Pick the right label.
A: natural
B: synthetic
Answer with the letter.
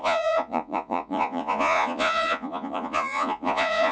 B